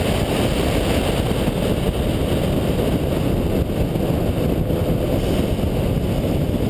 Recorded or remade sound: recorded